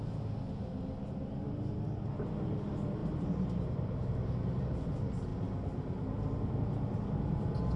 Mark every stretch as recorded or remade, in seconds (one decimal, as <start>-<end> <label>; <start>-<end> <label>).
0.0-3.0 recorded; 3.0-4.6 remade; 4.6-5.3 recorded; 5.3-6.6 remade; 6.6-7.8 recorded